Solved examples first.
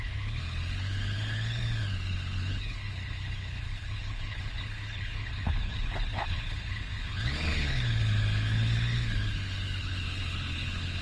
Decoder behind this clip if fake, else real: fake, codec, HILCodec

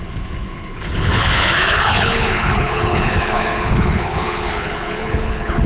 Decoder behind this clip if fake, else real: fake, codec, HILCodec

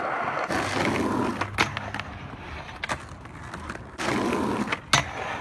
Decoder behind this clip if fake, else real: real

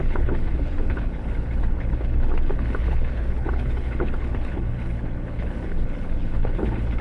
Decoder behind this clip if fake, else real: fake, codec, HILCodec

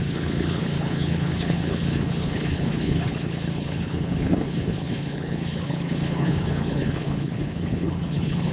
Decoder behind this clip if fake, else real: fake, codec, HILCodec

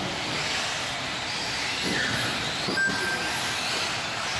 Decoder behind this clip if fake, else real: real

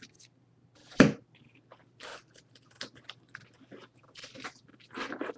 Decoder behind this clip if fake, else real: real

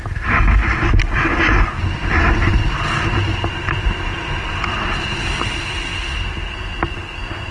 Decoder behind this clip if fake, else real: real